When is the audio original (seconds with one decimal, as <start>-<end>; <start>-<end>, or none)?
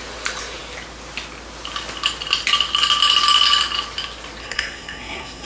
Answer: 0.0-4.4